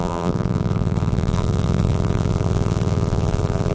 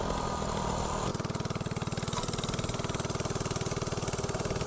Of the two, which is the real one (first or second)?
second